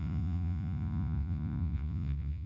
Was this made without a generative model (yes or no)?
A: no